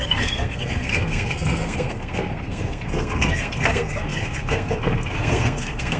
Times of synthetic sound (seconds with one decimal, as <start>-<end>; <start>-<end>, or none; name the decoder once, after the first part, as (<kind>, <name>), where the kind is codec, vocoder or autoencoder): 0.0-6.0 (codec, SNAC)